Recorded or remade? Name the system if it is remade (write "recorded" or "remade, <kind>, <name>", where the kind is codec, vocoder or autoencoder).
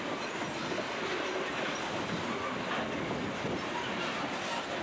recorded